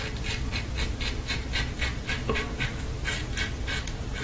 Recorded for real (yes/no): yes